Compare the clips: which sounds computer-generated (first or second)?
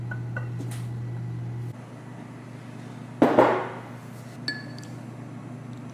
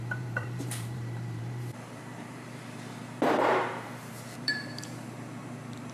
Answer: second